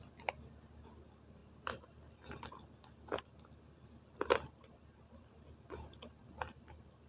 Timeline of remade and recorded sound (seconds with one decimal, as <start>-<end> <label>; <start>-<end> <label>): 0.0-7.1 recorded